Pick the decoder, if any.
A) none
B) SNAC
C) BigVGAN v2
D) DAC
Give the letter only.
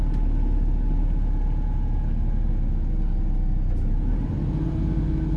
A